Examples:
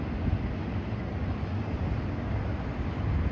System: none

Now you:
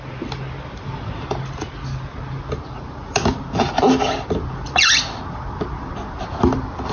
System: none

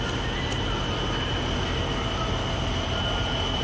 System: none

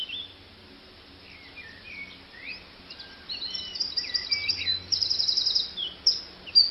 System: none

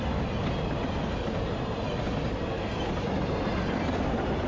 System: none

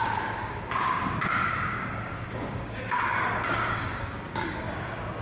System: codec, DAC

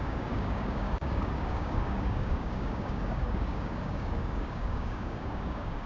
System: codec, DAC